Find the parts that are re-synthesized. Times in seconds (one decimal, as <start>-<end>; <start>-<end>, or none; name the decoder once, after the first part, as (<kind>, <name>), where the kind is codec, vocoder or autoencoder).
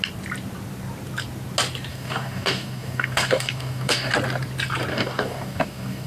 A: 1.9-4.1 (codec, DAC); 4.9-6.1